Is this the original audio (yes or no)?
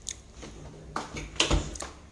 yes